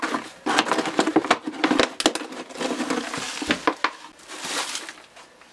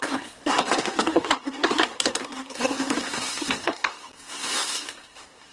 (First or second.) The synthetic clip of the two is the second